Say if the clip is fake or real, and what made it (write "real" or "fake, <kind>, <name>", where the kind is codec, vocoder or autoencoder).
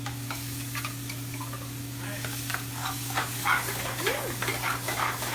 fake, codec, DAC